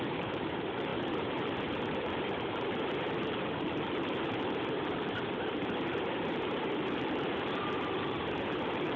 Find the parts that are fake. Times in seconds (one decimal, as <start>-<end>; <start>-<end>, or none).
0.0-9.0